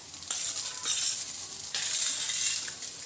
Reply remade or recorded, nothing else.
recorded